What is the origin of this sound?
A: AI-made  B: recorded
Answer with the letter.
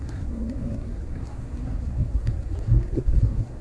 A